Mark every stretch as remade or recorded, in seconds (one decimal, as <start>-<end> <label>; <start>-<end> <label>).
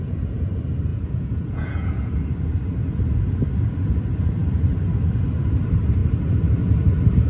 0.0-0.5 remade; 0.5-0.9 recorded; 0.9-2.3 remade; 2.3-7.3 recorded